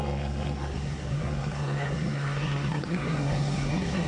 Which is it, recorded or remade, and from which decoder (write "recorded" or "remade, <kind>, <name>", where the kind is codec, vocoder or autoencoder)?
remade, codec, SNAC